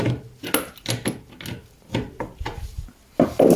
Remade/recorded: recorded